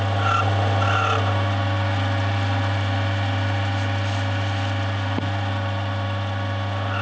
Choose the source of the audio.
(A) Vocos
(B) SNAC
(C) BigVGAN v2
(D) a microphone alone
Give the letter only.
D